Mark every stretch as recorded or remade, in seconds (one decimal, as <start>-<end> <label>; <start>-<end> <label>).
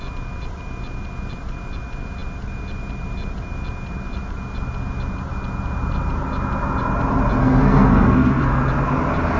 0.0-7.4 recorded; 7.4-8.6 remade; 8.6-9.4 recorded